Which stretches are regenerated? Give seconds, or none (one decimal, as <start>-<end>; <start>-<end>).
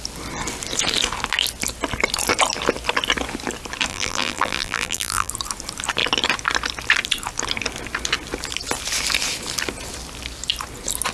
3.9-5.3